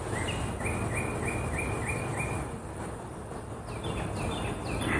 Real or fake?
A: real